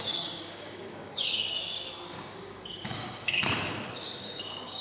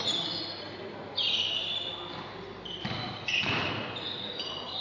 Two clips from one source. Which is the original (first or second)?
second